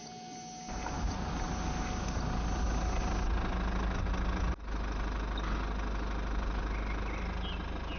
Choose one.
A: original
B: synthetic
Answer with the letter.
A